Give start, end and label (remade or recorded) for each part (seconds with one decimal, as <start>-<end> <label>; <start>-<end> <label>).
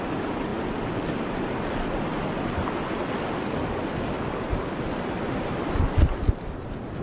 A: 0.0-7.0 recorded